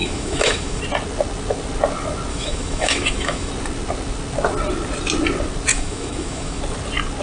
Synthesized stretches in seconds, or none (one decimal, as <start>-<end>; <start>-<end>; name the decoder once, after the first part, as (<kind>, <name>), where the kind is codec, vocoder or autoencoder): 0.0-0.8 (autoencoder, DAC-VAE); 2.3-3.5; 5.7-6.6